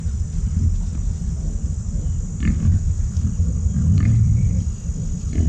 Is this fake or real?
real